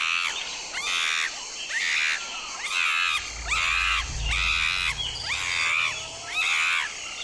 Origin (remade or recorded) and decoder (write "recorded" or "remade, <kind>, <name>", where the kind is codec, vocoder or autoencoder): recorded